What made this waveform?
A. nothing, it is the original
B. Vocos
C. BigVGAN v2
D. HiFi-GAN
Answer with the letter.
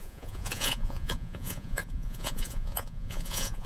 B